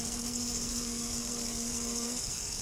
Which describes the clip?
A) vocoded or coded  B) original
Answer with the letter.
A